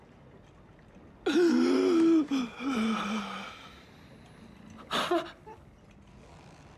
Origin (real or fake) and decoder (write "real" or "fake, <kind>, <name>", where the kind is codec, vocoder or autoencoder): real